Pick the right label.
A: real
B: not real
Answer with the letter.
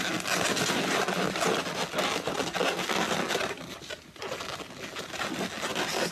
A